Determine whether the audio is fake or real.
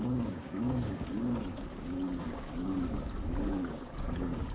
fake